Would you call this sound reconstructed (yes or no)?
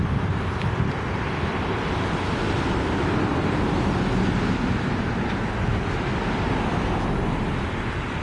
no